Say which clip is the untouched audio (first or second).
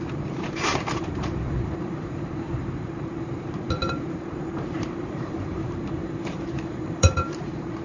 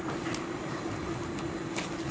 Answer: second